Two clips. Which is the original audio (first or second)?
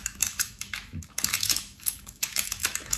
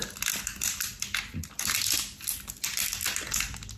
second